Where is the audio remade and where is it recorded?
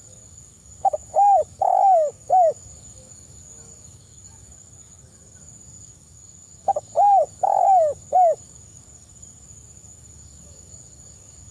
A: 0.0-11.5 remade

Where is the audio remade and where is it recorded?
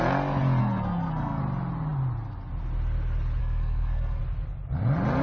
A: 0.0-0.6 recorded; 0.6-1.4 remade; 1.4-3.4 recorded; 3.4-4.2 remade; 4.2-5.2 recorded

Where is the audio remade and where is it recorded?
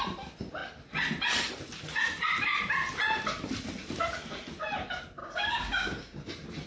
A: 0.0-5.2 recorded; 5.2-6.3 remade; 6.3-6.7 recorded